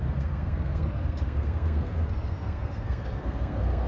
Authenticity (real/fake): fake